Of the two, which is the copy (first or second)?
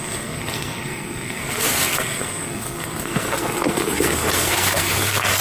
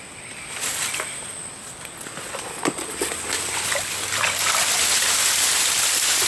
first